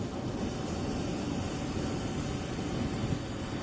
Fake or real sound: real